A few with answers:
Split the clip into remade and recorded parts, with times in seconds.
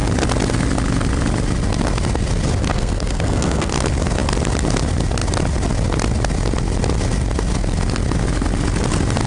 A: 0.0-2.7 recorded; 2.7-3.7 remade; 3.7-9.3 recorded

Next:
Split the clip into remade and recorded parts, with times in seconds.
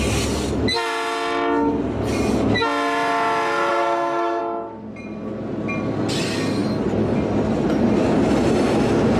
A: 0.0-3.7 recorded; 3.7-4.4 remade; 4.4-9.2 recorded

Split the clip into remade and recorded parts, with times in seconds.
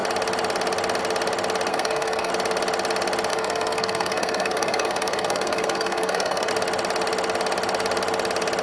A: 0.0-1.7 recorded; 1.7-2.3 remade; 2.3-3.3 recorded; 3.3-6.5 remade; 6.5-8.6 recorded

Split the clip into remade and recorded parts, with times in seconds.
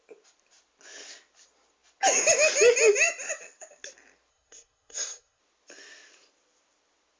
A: 0.0-4.3 recorded; 4.3-5.4 remade; 5.4-7.2 recorded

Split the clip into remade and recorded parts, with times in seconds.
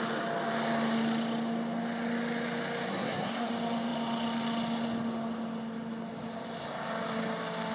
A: 0.0-2.9 recorded; 2.9-3.5 remade; 3.5-7.7 recorded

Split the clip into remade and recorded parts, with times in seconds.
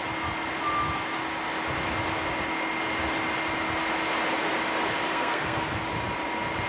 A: 0.0-5.1 recorded; 5.1-5.8 remade; 5.8-6.7 recorded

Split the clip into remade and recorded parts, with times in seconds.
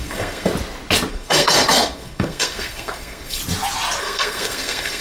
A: 0.0-0.5 remade; 0.5-1.1 recorded; 1.1-3.4 remade; 3.4-4.0 recorded; 4.0-5.0 remade